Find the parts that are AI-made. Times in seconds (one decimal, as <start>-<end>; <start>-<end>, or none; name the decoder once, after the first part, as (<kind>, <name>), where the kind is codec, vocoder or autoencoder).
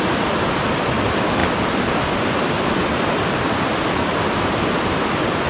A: none